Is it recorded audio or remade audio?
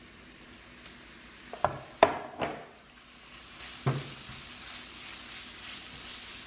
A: recorded